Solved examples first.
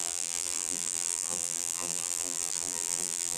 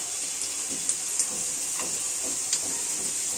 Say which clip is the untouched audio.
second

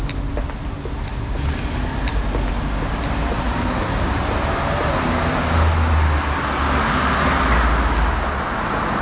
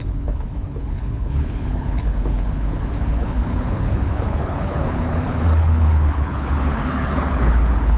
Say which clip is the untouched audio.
first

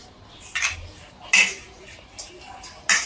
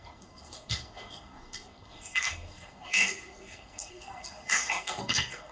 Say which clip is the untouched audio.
first